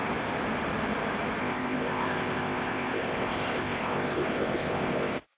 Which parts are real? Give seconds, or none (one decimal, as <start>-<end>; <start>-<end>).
0.0-1.4

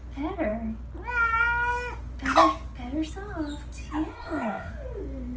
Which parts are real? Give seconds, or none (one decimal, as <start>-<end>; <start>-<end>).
0.0-4.1; 4.7-5.4